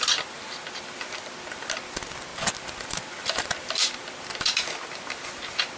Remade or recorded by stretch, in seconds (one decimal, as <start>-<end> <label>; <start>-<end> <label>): 0.0-5.8 recorded